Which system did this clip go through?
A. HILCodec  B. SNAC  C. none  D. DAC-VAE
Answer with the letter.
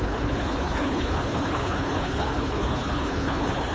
A